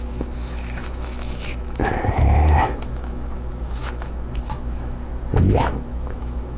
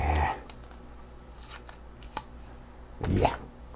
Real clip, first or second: second